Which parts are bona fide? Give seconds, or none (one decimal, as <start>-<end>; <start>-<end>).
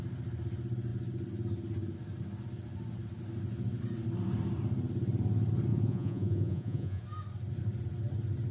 0.0-5.7; 7.0-8.5